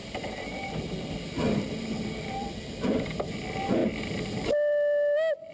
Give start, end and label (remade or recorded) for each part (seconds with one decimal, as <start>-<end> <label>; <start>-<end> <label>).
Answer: 0.0-3.3 remade; 3.3-5.5 recorded